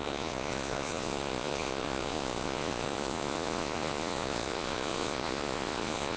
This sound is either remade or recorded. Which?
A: remade